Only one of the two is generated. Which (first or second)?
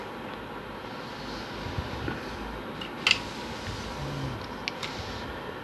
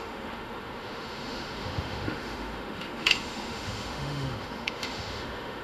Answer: second